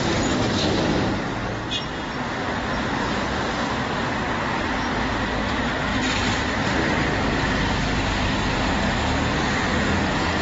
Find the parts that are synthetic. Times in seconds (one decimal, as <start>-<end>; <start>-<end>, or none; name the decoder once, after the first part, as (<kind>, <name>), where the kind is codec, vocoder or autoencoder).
none